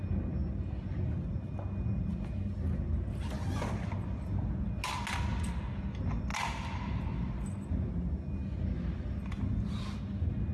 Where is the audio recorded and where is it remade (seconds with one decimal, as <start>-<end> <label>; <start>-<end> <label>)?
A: 0.0-10.5 recorded